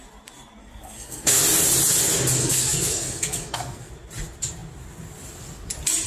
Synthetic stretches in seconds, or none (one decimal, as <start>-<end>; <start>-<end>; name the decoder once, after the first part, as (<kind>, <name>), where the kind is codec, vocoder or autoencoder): 0.6-1.4 (codec, SNAC); 2.4-3.9